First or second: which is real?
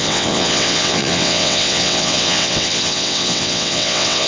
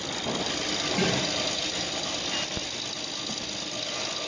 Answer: second